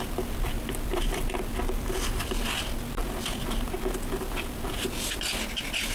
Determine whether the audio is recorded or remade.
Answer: remade